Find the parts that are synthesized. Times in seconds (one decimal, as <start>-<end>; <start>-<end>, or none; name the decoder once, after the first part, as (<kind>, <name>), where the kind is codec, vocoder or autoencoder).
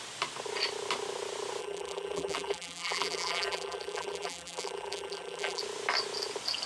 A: 1.6-5.6 (vocoder, BigVGAN v2)